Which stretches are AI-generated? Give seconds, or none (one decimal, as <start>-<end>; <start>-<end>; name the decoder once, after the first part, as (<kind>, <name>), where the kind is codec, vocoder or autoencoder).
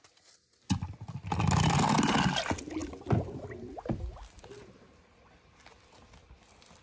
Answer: none